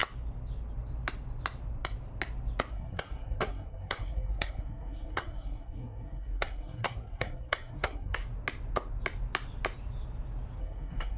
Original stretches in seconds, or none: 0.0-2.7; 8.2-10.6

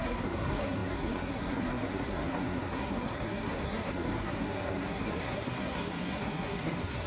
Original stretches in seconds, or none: none

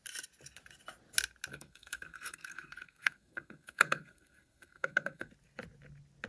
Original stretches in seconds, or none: 0.0-1.5; 5.3-6.3

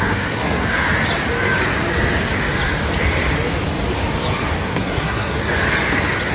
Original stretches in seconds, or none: 0.8-4.6; 5.5-6.3